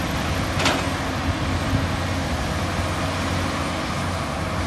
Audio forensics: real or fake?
real